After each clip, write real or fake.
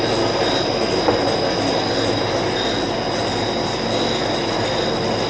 real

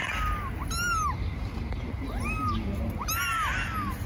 real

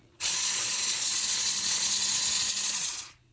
fake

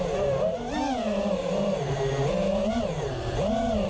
fake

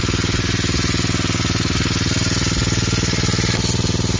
real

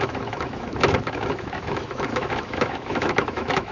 fake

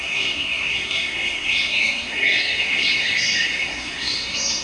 fake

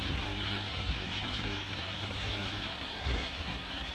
fake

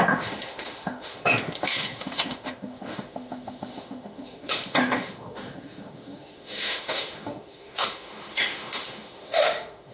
fake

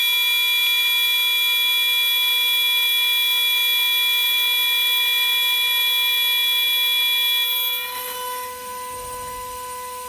real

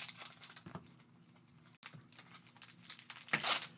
real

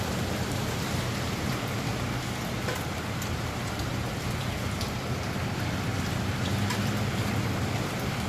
fake